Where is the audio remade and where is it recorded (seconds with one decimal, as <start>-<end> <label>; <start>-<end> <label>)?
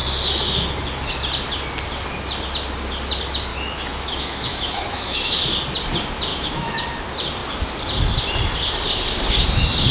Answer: 0.0-3.5 recorded; 3.5-5.4 remade; 5.4-6.3 recorded; 6.3-6.8 remade; 6.8-9.9 recorded